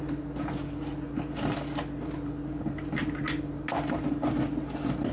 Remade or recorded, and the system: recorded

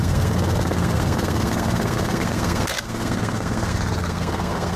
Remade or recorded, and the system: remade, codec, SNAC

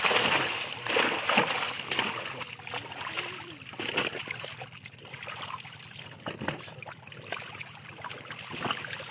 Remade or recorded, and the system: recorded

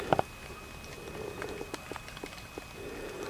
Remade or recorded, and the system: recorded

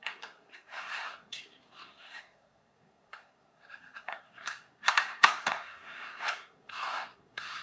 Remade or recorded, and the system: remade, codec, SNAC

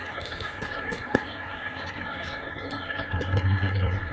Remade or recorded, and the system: remade, codec, SNAC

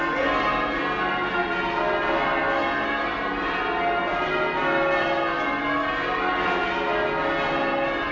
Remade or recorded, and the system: recorded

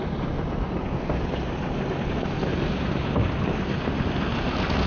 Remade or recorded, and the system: recorded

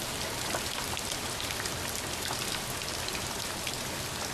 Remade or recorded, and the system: recorded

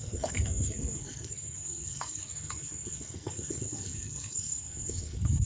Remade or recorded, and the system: remade, codec, SNAC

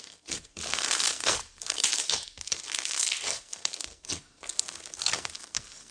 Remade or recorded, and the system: remade, codec, SNAC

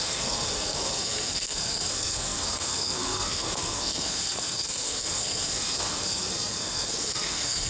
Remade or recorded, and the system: remade, codec, SNAC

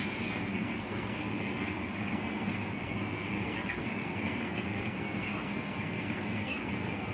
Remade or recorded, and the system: remade, codec, SNAC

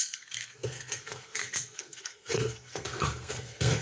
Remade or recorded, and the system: remade, codec, SNAC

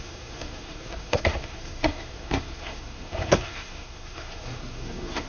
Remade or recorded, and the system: remade, codec, SNAC